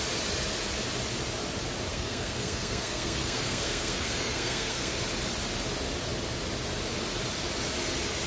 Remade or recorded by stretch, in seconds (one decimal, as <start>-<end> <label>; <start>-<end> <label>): 0.0-1.9 recorded; 1.9-5.0 remade; 5.0-8.3 recorded